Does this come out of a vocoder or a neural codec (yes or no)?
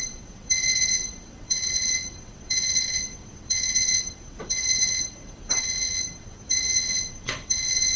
yes